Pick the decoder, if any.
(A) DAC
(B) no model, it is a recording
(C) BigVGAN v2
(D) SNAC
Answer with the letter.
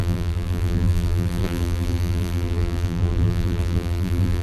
C